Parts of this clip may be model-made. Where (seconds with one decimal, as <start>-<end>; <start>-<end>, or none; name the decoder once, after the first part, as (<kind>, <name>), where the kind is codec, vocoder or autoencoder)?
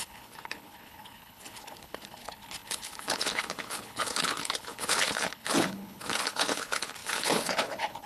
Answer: 0.0-8.1 (codec, HILCodec)